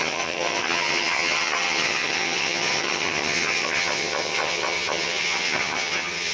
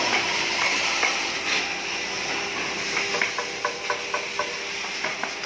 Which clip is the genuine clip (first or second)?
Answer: second